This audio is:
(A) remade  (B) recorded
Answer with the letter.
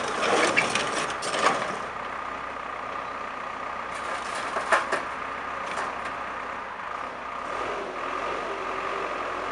B